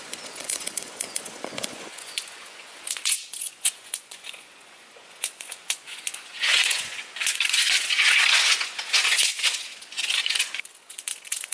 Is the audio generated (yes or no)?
yes